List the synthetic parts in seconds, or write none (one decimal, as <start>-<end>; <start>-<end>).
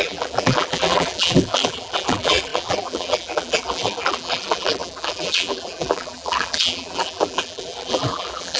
0.0-8.6